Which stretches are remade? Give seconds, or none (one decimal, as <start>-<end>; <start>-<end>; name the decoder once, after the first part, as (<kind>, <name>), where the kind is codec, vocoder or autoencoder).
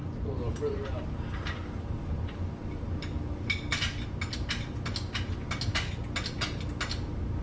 none